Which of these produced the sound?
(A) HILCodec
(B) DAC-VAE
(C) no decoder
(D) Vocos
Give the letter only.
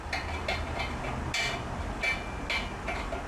C